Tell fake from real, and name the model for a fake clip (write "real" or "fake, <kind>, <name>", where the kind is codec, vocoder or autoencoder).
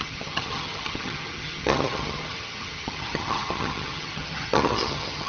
fake, vocoder, HiFi-GAN